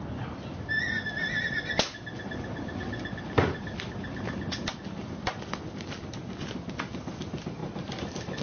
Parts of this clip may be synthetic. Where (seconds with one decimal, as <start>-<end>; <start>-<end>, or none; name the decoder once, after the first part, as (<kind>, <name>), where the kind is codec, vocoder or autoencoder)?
none